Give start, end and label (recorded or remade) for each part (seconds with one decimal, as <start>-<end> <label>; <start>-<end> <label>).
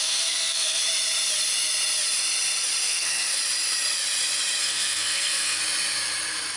0.0-0.8 remade; 0.8-2.9 recorded; 2.9-3.4 remade; 3.4-4.6 recorded; 4.6-5.6 remade; 5.6-6.6 recorded